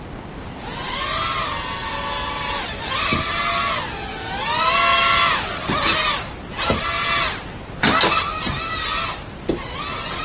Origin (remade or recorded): recorded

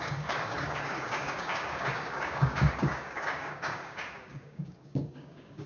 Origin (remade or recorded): remade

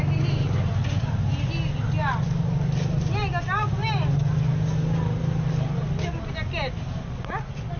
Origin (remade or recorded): recorded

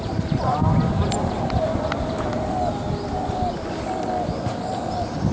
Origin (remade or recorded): recorded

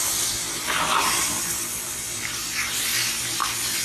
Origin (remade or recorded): recorded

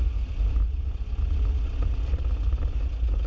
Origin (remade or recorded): recorded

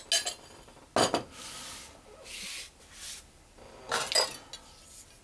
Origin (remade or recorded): recorded